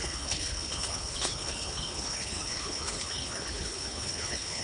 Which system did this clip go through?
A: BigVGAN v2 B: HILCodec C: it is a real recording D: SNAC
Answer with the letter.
B